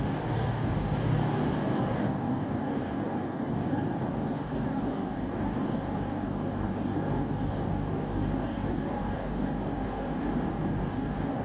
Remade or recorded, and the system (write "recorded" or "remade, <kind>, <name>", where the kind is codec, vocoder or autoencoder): remade, codec, DAC